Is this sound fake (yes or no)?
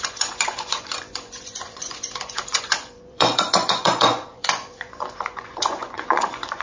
yes